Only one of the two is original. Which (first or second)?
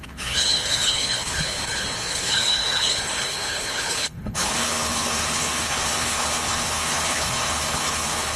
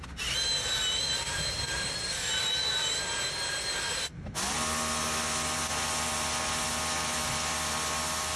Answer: second